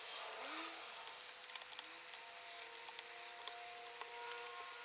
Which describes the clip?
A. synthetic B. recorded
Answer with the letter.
A